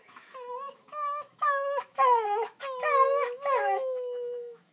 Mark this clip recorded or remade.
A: remade